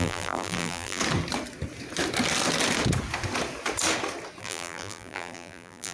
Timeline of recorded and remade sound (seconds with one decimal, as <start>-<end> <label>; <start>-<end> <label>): 0.0-1.0 remade; 1.0-4.4 recorded; 4.4-5.9 remade